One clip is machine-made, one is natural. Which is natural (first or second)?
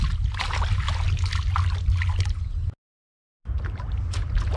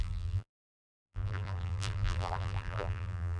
first